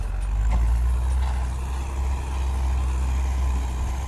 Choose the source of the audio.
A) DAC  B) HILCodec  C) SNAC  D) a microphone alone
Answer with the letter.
D